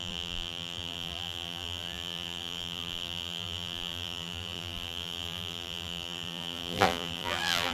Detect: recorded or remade remade